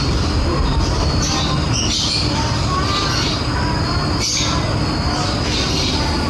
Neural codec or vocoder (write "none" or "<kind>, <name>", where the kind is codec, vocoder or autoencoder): none